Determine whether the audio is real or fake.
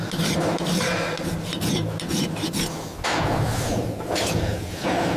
real